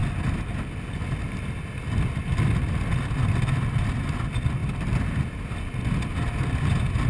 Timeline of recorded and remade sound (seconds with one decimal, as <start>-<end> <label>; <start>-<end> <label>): 0.0-7.1 recorded